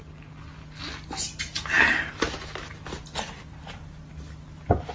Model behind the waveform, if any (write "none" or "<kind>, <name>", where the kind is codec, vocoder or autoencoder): none